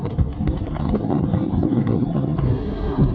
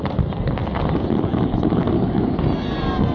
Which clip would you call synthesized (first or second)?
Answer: first